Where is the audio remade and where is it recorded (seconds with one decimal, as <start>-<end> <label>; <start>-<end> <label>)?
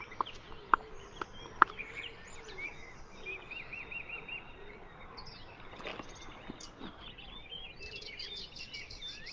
0.0-9.3 recorded